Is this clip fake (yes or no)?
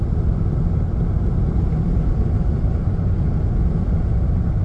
no